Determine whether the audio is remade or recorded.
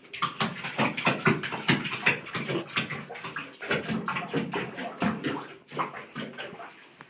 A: recorded